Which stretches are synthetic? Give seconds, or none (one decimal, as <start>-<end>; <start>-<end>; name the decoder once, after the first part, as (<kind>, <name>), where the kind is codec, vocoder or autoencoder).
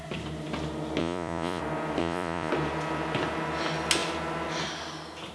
1.0-1.6 (vocoder, Vocos); 2.0-2.5